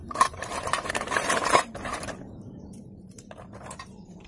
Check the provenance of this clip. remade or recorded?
remade